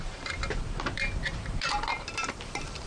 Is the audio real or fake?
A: fake